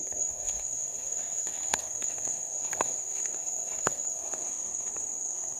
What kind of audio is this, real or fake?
fake